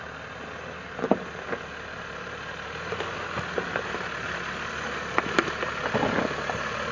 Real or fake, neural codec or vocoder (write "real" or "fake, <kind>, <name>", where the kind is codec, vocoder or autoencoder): real